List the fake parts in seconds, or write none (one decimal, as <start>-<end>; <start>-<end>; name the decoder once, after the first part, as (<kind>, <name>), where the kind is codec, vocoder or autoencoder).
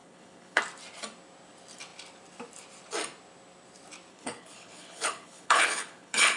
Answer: 0.0-0.6 (codec, HILCodec); 4.1-6.4